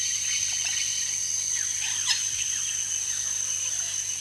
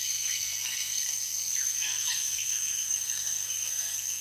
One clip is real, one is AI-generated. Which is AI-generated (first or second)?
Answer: second